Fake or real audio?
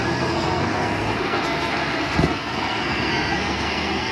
fake